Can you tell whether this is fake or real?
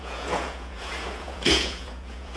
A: fake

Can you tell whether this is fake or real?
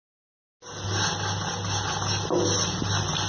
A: real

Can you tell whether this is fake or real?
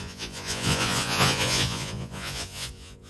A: fake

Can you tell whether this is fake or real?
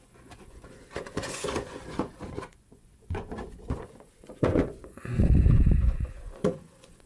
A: fake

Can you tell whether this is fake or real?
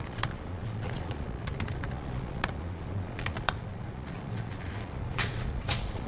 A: fake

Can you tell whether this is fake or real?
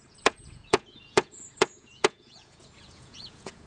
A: fake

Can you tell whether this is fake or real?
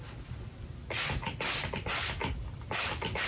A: real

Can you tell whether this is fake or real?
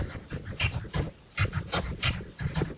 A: real